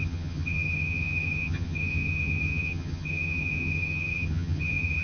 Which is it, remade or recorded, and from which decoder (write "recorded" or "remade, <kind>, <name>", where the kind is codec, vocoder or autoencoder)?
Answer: remade, vocoder, HiFi-GAN